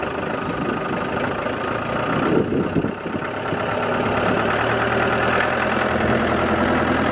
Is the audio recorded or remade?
recorded